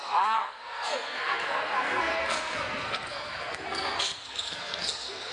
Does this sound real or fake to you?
fake